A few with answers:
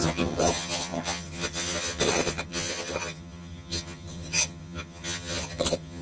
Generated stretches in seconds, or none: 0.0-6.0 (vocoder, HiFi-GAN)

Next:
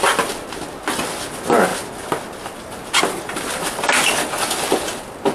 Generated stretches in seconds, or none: none